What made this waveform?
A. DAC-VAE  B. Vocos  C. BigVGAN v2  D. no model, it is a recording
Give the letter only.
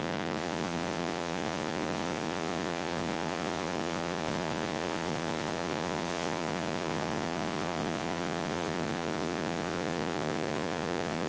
B